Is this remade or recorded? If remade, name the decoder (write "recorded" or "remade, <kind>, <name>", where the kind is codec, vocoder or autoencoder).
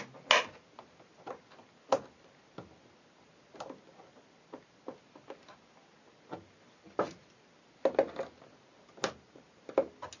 recorded